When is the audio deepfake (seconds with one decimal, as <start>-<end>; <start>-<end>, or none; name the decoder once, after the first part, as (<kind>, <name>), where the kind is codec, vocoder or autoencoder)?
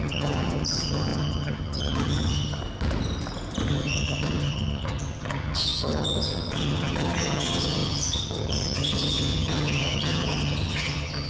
0.0-2.6 (vocoder, HiFi-GAN); 3.7-11.3